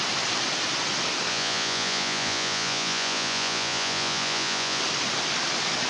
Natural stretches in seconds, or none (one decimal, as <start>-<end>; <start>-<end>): 0.0-1.3; 4.8-5.9